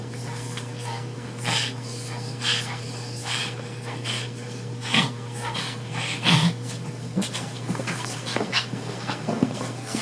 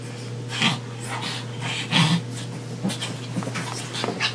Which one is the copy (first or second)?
first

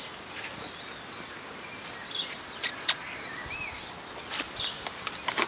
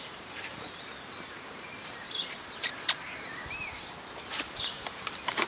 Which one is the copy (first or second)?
second